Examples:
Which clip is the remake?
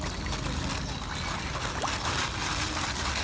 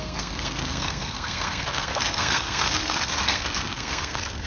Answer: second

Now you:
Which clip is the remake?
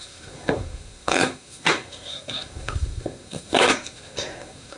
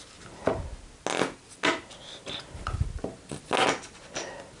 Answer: first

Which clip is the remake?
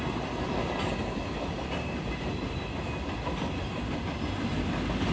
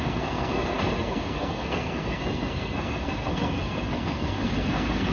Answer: second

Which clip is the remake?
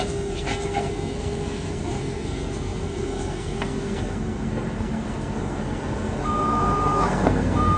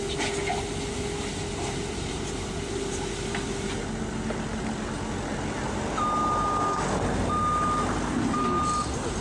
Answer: first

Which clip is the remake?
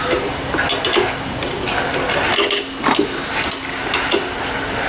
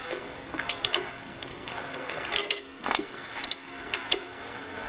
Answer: second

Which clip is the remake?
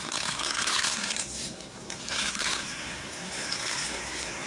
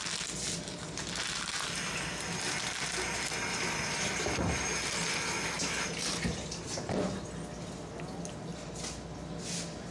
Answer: first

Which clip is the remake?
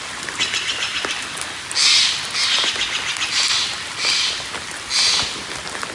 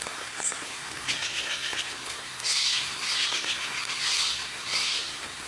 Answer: second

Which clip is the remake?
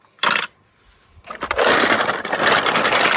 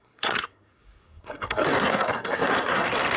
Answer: second